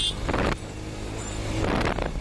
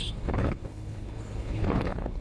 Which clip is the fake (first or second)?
second